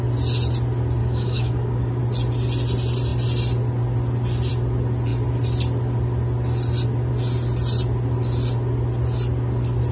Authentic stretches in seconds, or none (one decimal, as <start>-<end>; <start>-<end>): 0.0-1.0; 2.0-9.9